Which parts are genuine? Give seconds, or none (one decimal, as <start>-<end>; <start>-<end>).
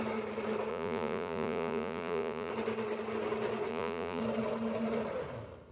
0.0-0.7; 2.5-3.7; 4.2-5.7